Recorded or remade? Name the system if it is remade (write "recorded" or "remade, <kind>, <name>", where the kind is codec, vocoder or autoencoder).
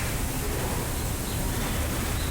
recorded